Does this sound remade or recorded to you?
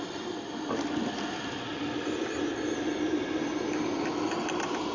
recorded